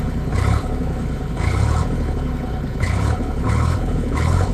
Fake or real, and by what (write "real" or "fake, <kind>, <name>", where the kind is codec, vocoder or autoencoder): fake, codec, HILCodec